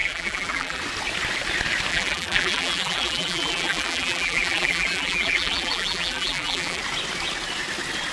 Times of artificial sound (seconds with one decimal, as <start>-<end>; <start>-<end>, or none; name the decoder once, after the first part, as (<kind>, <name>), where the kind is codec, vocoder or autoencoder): 0.0-0.8 (vocoder, BigVGAN v2); 1.9-6.8